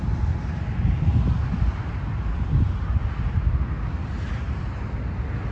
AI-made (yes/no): no